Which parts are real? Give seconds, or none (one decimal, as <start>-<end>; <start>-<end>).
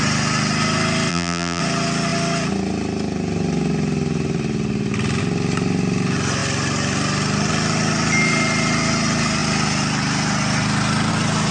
0.0-1.1; 1.6-11.5